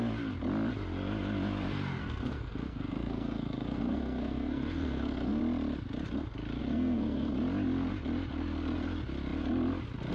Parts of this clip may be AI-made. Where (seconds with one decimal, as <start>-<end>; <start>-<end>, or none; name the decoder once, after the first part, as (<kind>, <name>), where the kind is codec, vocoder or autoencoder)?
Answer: 2.0-5.4 (codec, SNAC); 6.6-7.3